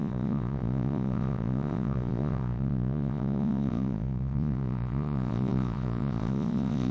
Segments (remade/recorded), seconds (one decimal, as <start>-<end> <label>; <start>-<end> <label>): 0.0-6.9 remade